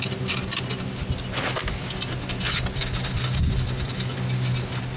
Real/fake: real